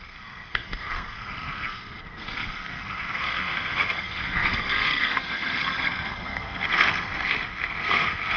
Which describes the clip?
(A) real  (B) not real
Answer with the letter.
B